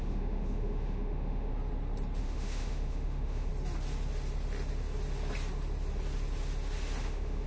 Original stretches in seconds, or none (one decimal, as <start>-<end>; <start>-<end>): 1.5-2.2; 3.5-7.0